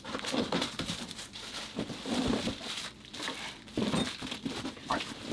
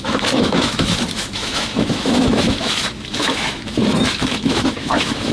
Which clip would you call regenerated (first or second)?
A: second